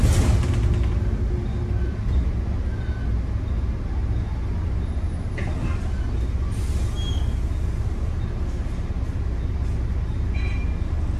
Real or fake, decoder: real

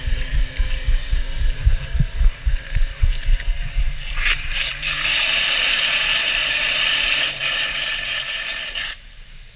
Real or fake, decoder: fake, vocoder, BigVGAN v2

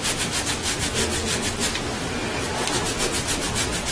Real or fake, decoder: real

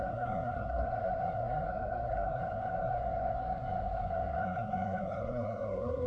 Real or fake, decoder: fake, codec, SNAC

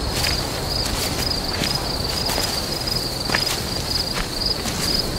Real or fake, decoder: real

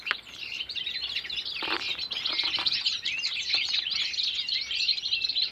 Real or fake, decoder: real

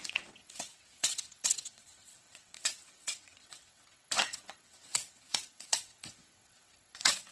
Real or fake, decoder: fake, vocoder, WaveNeXt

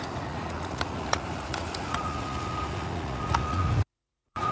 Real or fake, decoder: fake, vocoder, Vocos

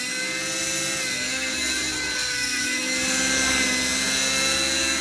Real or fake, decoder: real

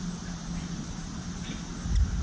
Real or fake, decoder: real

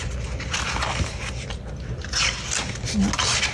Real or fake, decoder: real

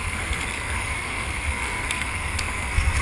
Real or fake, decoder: fake, codec, SNAC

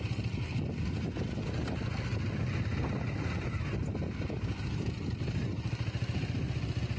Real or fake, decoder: real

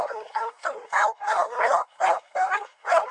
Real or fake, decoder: fake, codec, SNAC